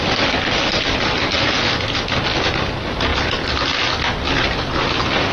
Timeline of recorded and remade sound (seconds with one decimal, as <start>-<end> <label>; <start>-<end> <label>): 0.0-5.3 recorded